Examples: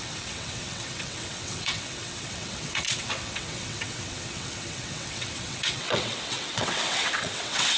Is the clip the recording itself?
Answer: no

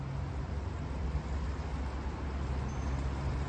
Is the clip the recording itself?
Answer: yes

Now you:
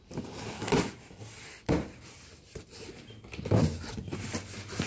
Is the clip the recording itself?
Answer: yes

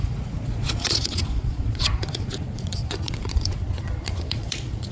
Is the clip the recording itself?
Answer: no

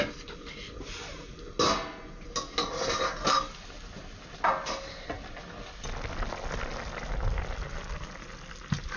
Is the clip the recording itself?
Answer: yes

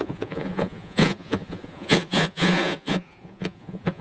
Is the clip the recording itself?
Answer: no